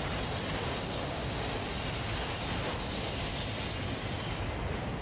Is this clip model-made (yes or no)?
no